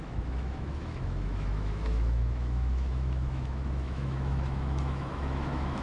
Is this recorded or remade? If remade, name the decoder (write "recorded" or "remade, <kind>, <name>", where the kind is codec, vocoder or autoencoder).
remade, autoencoder, DAC-VAE